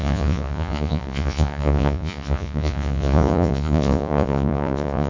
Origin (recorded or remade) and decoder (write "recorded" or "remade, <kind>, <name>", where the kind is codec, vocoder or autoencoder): remade, vocoder, Vocos